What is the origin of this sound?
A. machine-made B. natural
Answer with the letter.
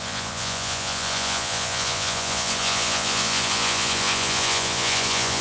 A